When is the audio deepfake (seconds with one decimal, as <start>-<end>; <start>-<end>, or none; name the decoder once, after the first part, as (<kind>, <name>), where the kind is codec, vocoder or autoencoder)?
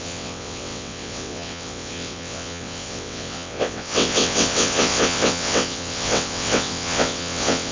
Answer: 0.0-7.7 (vocoder, WaveNeXt)